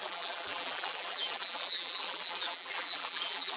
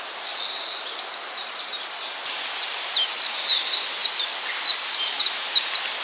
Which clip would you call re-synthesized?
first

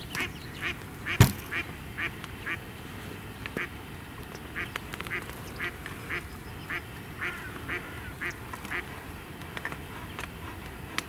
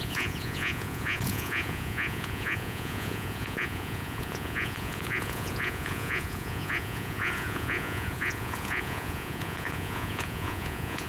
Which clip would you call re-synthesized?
second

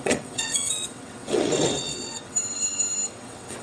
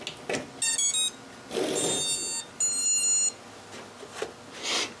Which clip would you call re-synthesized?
first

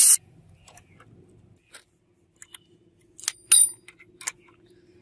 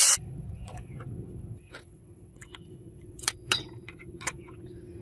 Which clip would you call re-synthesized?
second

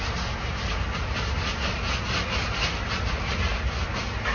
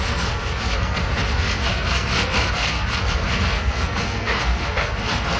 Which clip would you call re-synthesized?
second